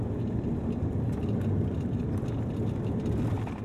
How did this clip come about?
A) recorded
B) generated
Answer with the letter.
A